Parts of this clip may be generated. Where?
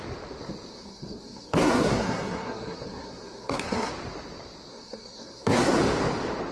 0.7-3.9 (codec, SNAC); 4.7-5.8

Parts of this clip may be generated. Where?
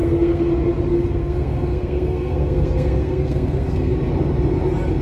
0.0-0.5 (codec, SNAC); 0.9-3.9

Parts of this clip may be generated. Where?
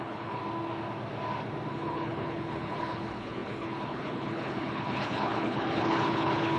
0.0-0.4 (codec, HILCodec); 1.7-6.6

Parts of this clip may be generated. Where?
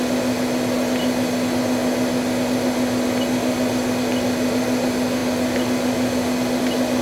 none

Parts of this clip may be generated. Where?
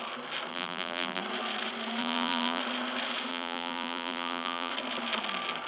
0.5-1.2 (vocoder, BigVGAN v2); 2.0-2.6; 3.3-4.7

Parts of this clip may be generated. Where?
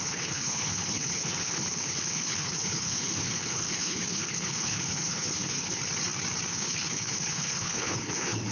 0.0-5.8 (codec, HILCodec); 6.5-8.5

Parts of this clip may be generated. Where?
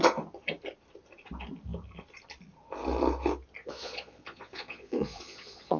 3.6-5.8 (vocoder, Vocos)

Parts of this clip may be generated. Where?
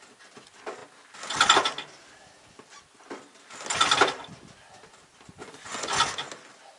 5.4-6.0 (vocoder, Vocos)